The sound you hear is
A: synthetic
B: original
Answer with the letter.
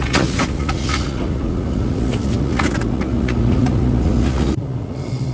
A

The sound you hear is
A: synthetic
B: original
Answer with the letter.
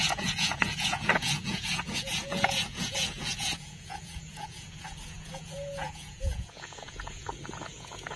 A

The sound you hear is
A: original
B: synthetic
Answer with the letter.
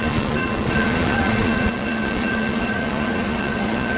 B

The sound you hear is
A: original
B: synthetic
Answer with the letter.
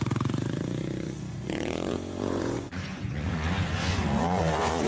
B